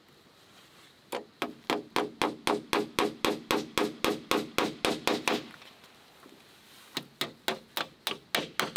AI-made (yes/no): no